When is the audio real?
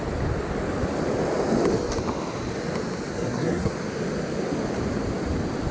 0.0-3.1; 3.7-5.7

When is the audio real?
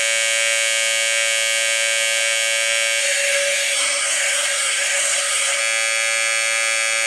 0.0-3.0; 5.6-7.1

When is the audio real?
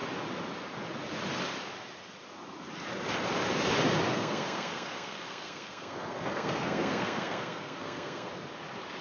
0.0-4.1; 8.3-9.0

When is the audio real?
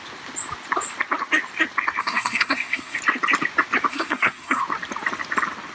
0.0-2.0; 3.0-3.9; 4.6-5.7